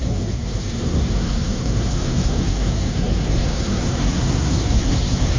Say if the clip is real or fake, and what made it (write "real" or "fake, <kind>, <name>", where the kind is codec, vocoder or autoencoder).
fake, codec, SNAC